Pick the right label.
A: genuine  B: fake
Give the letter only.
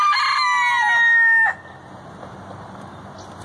A